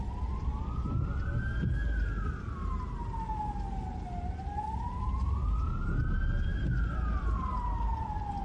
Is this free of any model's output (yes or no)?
yes